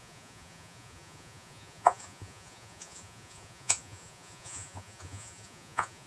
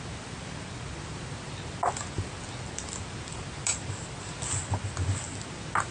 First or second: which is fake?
first